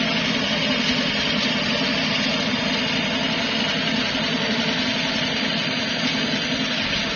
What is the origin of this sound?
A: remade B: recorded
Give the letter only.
B